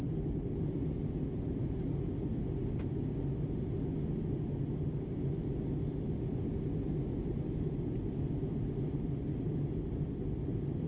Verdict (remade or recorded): recorded